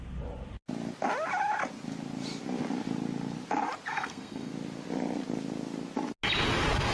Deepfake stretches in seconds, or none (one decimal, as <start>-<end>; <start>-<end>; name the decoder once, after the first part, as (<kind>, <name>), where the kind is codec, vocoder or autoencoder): 3.9-4.5 (codec, SNAC)